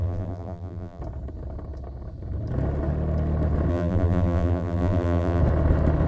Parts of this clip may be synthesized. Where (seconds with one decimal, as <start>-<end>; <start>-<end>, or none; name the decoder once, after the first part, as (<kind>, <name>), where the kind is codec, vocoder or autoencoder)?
0.0-1.0 (vocoder, BigVGAN v2); 3.7-5.4